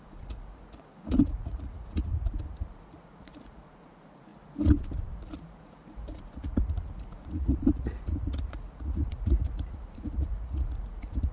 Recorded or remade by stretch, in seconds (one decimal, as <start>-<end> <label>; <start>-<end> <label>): 0.0-2.1 remade; 2.1-2.7 recorded; 2.7-4.3 remade; 4.3-5.2 recorded; 5.2-11.3 remade